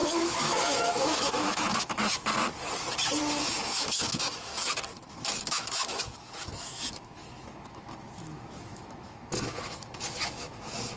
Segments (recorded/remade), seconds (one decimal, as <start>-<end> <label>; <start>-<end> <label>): 0.0-2.3 remade; 2.3-3.4 recorded; 3.4-4.5 remade; 4.5-5.1 recorded; 5.1-11.0 remade